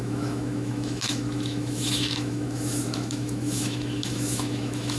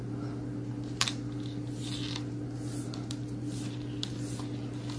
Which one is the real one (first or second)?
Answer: second